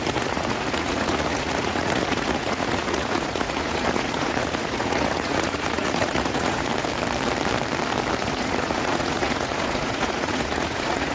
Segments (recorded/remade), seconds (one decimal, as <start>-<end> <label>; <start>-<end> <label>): 0.0-6.7 remade; 6.7-8.2 recorded; 8.2-11.1 remade